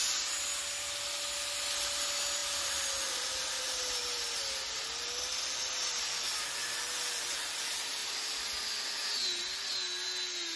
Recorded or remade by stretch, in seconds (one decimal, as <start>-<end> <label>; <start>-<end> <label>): 0.0-10.6 recorded